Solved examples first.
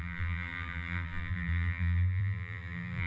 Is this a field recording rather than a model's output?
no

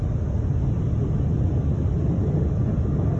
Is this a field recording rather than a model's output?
yes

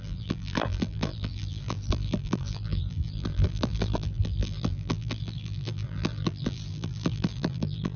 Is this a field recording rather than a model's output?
no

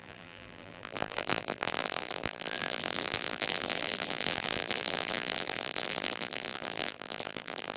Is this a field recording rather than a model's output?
no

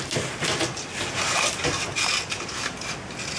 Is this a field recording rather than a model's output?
yes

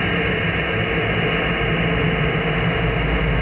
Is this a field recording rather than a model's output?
yes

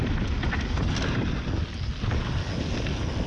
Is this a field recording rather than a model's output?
yes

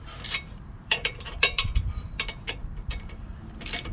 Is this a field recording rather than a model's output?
no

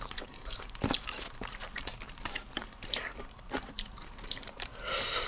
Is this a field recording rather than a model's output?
no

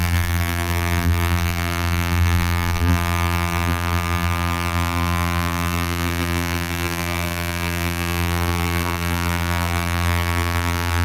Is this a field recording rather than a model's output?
no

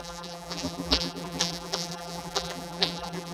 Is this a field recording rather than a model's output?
no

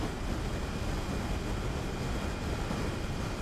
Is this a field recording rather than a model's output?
yes